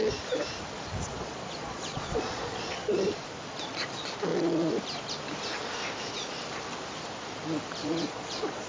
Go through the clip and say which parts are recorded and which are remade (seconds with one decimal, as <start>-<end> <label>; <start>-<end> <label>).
0.0-1.1 recorded; 1.1-2.9 remade; 2.9-7.8 recorded; 7.8-8.7 remade